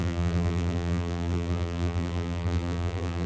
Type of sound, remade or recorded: remade